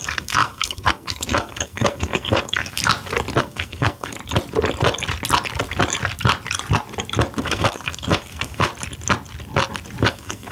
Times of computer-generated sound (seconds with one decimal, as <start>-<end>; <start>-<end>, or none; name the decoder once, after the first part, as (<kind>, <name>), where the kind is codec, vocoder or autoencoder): 0.0-2.8 (codec, SNAC); 3.4-4.2; 7.4-8.7; 10.1-10.5